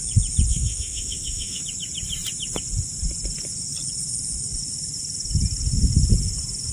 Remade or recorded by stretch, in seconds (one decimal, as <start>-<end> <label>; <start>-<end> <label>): 0.0-0.5 recorded; 0.5-1.6 remade; 1.6-6.7 recorded